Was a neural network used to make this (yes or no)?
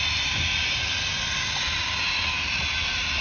no